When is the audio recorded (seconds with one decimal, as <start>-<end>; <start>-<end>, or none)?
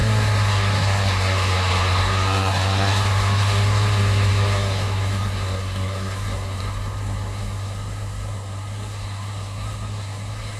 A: none